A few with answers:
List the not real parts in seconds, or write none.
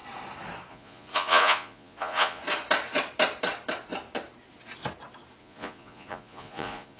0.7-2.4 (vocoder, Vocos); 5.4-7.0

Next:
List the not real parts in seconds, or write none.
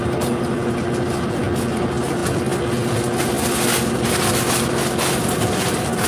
none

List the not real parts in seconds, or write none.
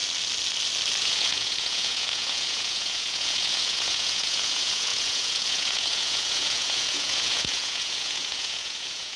1.0-9.2 (vocoder, Vocos)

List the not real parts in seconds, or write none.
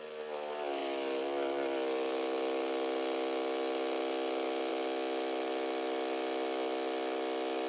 none